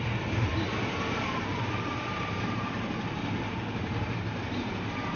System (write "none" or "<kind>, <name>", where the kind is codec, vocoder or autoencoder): vocoder, BigVGAN v2